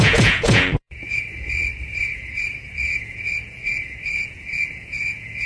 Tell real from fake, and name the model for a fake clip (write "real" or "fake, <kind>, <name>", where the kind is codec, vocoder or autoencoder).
fake, vocoder, Vocos